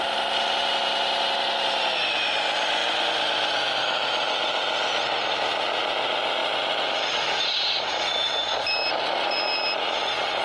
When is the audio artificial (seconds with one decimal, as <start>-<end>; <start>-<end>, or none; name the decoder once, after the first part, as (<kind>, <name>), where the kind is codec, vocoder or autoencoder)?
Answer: none